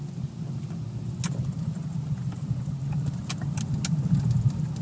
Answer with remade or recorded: recorded